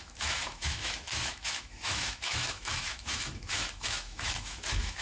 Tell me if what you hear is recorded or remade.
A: remade